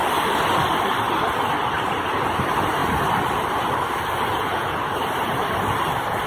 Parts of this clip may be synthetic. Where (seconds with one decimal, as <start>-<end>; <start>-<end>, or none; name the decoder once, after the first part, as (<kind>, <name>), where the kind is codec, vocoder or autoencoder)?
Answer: 4.3-4.8 (vocoder, Vocos)